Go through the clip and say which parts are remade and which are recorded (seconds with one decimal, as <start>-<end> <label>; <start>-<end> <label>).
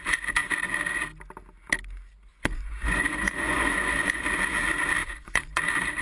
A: 0.0-2.3 recorded; 2.3-4.2 remade; 4.2-5.0 recorded; 5.0-5.6 remade; 5.6-6.0 recorded